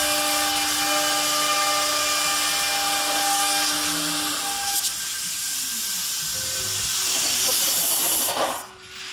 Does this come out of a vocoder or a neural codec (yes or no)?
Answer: no